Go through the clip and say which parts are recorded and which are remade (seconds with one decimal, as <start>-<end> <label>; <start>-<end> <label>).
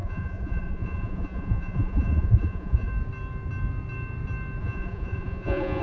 0.0-2.9 remade; 2.9-4.6 recorded; 4.6-5.8 remade